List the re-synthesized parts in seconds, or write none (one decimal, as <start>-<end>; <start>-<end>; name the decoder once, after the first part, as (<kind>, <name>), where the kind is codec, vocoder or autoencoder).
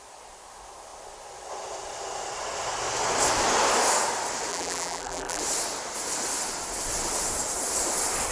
4.5-5.4 (vocoder, BigVGAN v2)